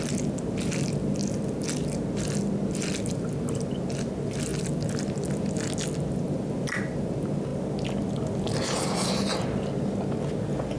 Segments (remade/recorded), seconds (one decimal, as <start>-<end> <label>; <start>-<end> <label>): 0.0-10.8 recorded